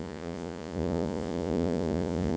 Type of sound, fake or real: fake